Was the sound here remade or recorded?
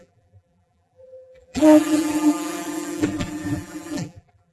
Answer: remade